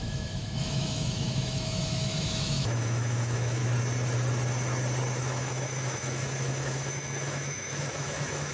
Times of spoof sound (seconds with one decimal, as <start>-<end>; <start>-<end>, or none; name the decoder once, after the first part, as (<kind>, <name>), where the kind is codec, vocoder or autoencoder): 0.0-3.6 (autoencoder, DAC-VAE); 5.2-8.5